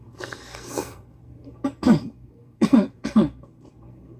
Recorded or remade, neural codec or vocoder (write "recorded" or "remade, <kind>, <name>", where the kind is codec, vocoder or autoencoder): remade, codec, SNAC